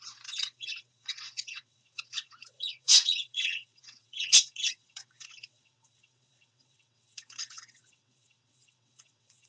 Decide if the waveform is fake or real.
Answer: fake